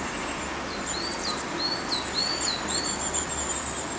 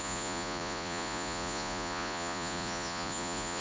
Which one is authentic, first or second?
first